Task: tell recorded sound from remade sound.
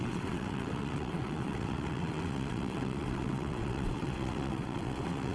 remade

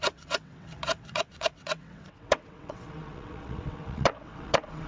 remade